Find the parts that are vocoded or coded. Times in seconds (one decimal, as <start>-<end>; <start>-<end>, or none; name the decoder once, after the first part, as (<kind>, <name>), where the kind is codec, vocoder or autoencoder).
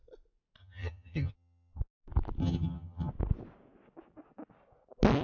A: 0.6-1.8 (vocoder, HiFi-GAN); 2.4-3.1